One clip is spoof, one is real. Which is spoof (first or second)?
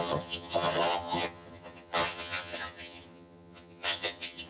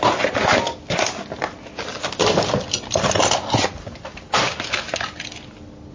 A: first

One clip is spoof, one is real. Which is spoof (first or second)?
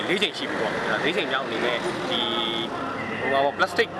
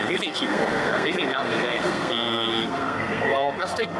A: second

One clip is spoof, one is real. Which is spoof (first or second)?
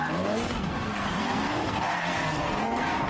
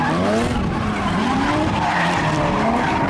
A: first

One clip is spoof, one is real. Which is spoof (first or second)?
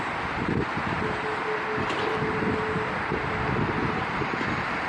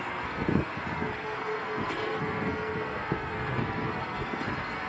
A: second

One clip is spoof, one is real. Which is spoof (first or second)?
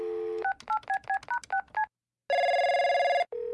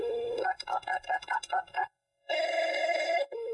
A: second